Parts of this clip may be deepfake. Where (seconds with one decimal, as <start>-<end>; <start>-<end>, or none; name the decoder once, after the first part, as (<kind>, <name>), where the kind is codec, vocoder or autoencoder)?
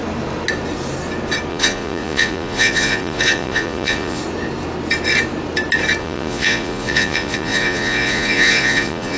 1.5-4.2 (vocoder, Vocos); 6.0-9.2